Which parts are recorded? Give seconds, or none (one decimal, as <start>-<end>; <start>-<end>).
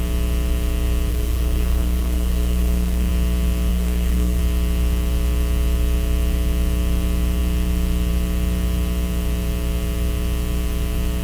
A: 0.0-1.1; 3.1-3.7; 4.4-11.2